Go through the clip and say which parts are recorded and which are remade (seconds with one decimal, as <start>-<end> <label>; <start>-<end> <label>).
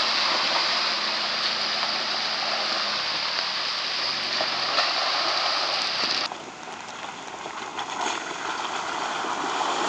0.0-9.9 recorded